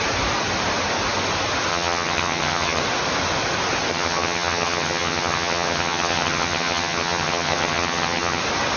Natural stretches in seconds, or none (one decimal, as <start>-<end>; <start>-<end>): 0.0-1.7; 2.8-3.9; 8.4-8.8